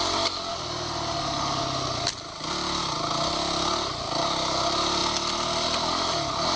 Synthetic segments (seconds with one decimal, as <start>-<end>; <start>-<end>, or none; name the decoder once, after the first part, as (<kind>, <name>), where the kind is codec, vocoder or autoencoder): none

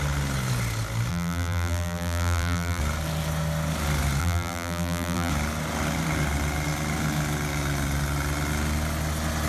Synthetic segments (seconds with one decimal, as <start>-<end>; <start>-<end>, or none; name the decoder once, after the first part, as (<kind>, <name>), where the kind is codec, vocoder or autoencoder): 1.1-2.8 (vocoder, BigVGAN v2); 4.2-5.3

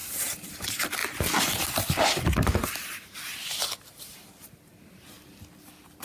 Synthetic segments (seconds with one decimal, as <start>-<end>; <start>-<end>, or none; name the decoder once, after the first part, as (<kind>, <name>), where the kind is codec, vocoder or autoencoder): none